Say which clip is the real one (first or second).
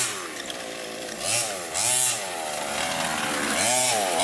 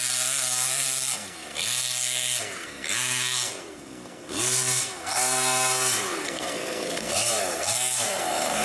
first